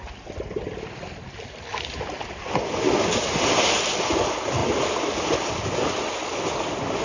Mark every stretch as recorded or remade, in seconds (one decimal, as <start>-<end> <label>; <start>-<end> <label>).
0.0-7.0 recorded